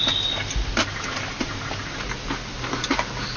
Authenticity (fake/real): real